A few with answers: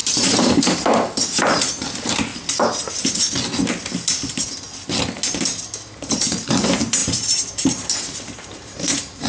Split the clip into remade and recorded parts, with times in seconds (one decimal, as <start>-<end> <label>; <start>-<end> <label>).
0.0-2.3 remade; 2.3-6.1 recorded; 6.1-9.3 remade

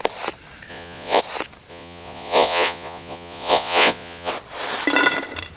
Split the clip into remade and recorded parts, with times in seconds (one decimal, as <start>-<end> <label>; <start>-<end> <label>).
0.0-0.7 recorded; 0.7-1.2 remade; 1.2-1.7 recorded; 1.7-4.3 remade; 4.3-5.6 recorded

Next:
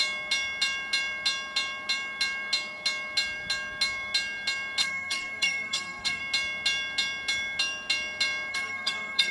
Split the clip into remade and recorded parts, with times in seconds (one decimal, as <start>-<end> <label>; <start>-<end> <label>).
0.0-4.8 recorded; 4.8-6.2 remade; 6.2-8.5 recorded; 8.5-9.3 remade

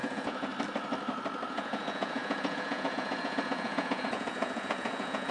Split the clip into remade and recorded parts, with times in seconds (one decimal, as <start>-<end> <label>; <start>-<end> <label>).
0.0-0.5 remade; 0.5-1.5 recorded; 1.5-5.3 remade

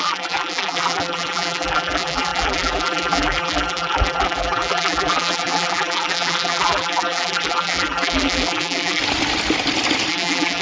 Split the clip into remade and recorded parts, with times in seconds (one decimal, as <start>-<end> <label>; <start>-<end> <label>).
0.0-9.0 remade; 9.0-10.1 recorded; 10.1-10.6 remade

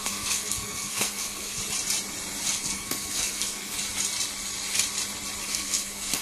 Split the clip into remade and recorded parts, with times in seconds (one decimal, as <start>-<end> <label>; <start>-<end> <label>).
0.0-1.6 remade; 1.6-2.5 recorded; 2.5-3.8 remade; 3.8-5.5 recorded; 5.5-6.2 remade